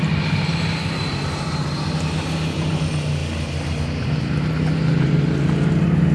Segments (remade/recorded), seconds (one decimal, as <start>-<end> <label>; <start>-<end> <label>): 0.0-6.1 recorded